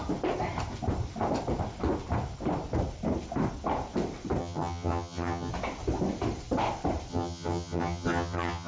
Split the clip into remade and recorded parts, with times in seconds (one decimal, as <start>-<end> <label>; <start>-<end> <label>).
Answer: 0.0-4.4 recorded; 4.4-5.5 remade; 5.5-7.1 recorded; 7.1-8.7 remade